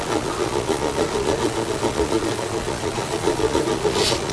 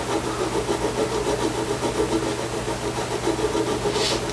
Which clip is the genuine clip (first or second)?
second